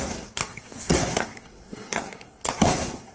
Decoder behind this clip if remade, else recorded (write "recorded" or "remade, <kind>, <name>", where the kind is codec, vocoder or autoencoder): remade, codec, SNAC